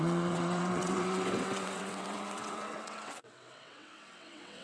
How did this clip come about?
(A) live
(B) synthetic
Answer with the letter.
B